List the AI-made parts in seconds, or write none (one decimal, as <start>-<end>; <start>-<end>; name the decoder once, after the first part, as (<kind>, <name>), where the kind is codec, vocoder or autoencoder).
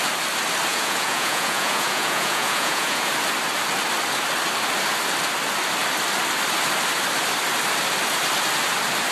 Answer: 0.7-3.1 (vocoder, Vocos)